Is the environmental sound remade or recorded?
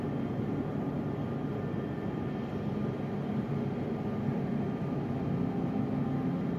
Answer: recorded